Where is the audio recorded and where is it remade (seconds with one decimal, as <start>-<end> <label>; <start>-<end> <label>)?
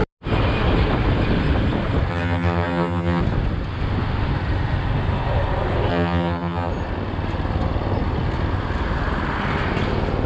0.0-2.1 recorded; 2.1-3.2 remade; 3.2-5.9 recorded; 5.9-6.7 remade; 6.7-10.3 recorded